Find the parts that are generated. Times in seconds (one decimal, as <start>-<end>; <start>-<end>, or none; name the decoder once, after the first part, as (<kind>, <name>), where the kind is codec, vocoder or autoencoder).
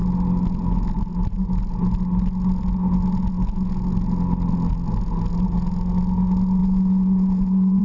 6.6-7.8 (vocoder, Vocos)